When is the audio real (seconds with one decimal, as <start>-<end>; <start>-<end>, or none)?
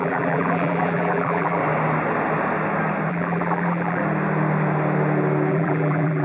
1.6-3.1; 4.0-5.5